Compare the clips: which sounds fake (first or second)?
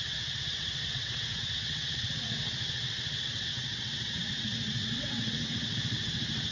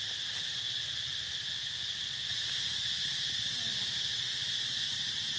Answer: first